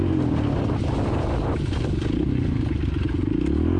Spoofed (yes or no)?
no